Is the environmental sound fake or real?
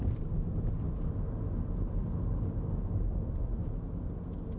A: real